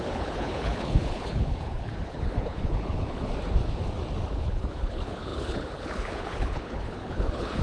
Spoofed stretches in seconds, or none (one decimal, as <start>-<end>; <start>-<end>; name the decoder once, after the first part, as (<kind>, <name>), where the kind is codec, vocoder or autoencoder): 0.0-3.3 (codec, HILCodec); 4.3-7.6